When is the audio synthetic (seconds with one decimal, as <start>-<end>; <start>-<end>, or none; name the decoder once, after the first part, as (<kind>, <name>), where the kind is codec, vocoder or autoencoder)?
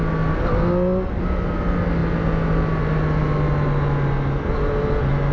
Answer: none